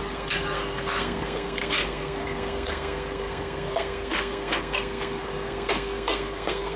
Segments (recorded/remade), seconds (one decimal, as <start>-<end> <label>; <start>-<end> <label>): 0.0-6.8 remade